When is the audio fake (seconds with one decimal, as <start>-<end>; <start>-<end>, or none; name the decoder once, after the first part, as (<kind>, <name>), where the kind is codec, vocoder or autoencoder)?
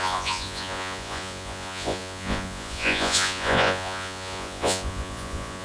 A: 0.0-5.6 (vocoder, Vocos)